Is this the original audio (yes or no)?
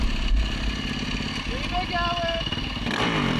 yes